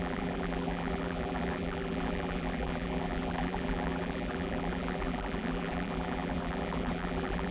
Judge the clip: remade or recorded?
remade